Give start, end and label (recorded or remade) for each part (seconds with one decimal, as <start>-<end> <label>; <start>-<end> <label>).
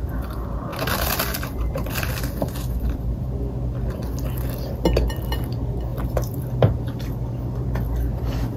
0.0-0.7 recorded; 0.7-3.0 remade; 3.0-5.9 recorded; 5.9-6.4 remade; 6.4-8.6 recorded